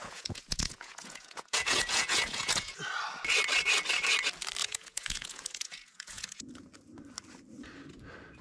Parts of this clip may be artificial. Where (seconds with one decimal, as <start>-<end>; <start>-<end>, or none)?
0.0-2.8; 4.6-6.5